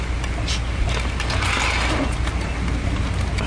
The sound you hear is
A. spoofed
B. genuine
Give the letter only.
B